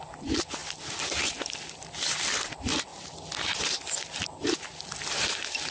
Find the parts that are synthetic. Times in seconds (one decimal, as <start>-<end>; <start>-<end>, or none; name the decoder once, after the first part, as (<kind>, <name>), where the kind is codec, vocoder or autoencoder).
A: 0.0-2.9 (vocoder, BigVGAN v2); 4.7-5.7